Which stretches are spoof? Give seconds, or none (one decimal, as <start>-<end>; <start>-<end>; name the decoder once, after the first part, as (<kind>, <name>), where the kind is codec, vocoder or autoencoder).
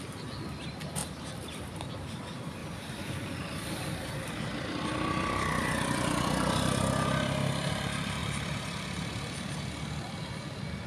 1.0-1.9 (vocoder, BigVGAN v2); 2.6-7.7; 8.2-9.7